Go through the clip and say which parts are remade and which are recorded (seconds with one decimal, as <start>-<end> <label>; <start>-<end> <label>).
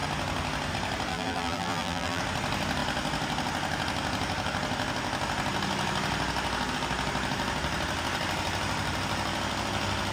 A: 0.0-1.1 recorded; 1.1-2.2 remade; 2.2-10.1 recorded